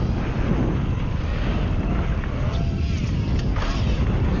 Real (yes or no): yes